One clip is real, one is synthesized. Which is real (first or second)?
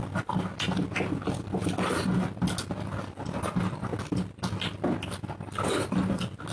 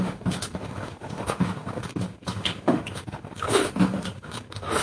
first